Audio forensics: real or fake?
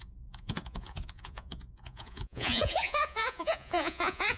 fake